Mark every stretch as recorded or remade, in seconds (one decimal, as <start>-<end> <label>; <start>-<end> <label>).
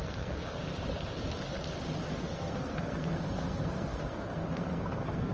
0.0-0.6 remade; 0.6-2.0 recorded; 2.0-5.3 remade